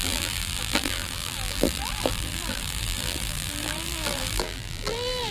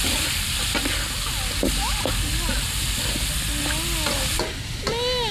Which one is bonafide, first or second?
second